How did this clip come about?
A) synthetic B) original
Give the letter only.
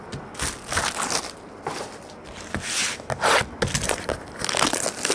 B